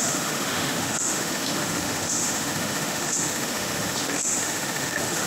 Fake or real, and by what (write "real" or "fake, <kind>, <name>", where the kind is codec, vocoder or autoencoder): fake, autoencoder, DAC-VAE